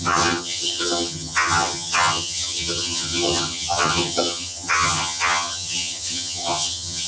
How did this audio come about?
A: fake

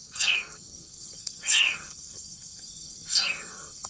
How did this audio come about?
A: fake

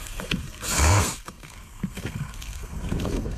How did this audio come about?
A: fake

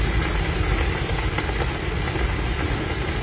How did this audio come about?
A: real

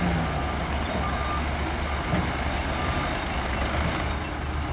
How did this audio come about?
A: real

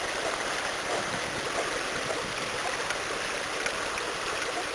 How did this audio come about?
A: real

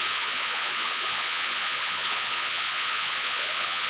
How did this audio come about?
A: fake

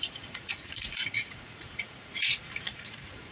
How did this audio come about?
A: fake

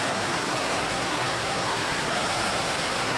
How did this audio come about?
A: fake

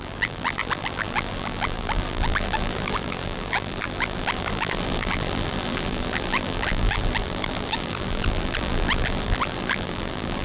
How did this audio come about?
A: fake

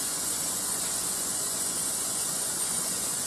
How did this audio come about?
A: fake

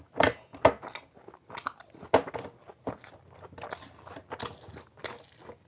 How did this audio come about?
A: real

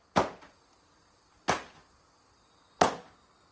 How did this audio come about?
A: real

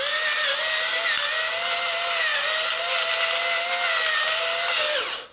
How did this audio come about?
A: real